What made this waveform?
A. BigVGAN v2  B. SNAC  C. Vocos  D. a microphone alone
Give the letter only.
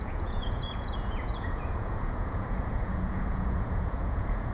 C